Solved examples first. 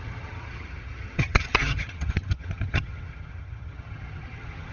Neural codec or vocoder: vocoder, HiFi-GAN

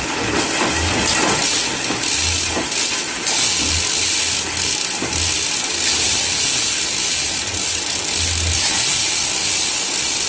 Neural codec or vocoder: none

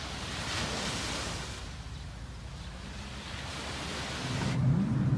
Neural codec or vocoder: none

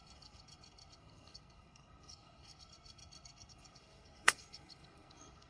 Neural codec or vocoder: codec, SNAC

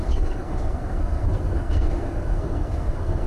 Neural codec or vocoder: codec, SNAC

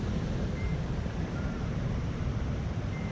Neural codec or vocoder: vocoder, BigVGAN v2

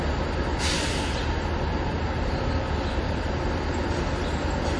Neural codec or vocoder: none